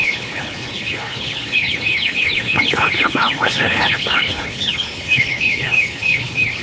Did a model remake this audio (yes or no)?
yes